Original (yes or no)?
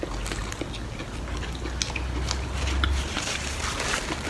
yes